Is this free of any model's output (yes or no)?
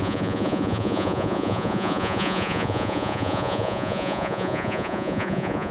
no